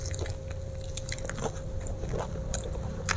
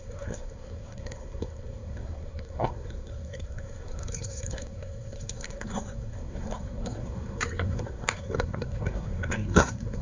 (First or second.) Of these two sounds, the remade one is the second